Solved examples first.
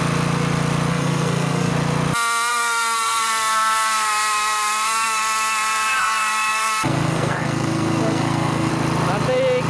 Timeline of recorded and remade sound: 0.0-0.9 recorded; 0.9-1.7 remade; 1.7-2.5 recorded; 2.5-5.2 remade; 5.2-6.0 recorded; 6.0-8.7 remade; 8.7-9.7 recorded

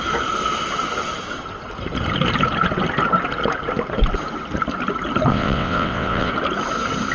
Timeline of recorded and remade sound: 0.0-5.3 recorded; 5.3-6.3 remade; 6.3-7.1 recorded

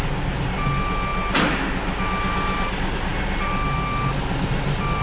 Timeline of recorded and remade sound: 0.0-5.0 recorded

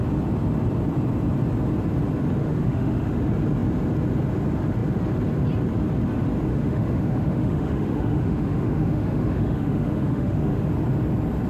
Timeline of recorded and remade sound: 0.0-2.4 recorded; 2.4-3.2 remade; 3.2-6.5 recorded; 6.5-10.7 remade; 10.7-11.5 recorded

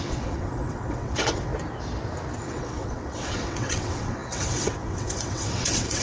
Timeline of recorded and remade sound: 0.0-1.5 remade; 1.5-2.4 recorded; 2.4-6.0 remade